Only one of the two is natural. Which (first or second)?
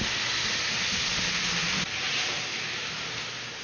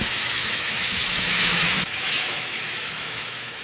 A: first